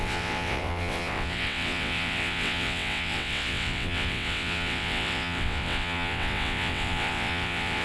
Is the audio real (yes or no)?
no